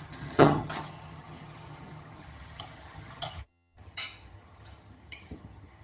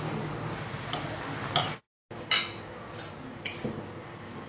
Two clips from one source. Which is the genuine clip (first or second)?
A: second